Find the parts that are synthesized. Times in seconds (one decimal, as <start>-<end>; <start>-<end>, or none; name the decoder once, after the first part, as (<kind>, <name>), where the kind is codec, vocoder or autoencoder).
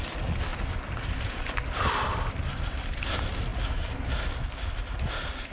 0.5-3.1 (vocoder, BigVGAN v2)